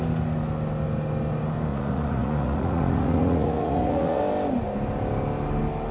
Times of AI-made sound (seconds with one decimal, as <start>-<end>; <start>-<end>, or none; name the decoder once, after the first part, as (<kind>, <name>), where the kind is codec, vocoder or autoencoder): 1.7-4.2 (vocoder, Vocos)